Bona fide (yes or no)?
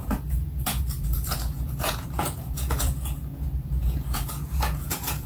no